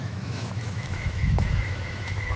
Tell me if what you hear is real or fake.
fake